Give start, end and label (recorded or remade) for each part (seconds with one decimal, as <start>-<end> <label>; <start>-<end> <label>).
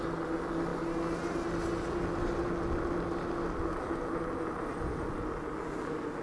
0.0-6.2 recorded